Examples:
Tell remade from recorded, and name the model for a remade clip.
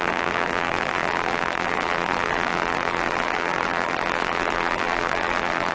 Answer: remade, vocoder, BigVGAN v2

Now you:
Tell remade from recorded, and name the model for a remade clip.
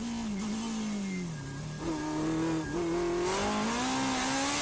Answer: recorded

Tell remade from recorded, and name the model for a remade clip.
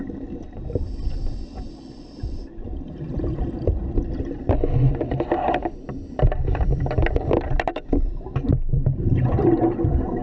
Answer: remade, vocoder, BigVGAN v2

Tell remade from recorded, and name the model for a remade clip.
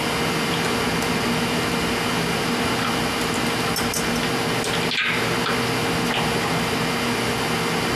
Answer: recorded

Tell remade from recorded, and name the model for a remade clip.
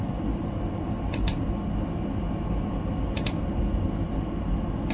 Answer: recorded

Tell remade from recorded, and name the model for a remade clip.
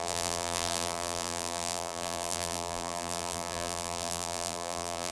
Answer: remade, vocoder, BigVGAN v2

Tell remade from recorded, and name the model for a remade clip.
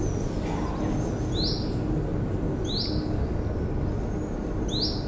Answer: recorded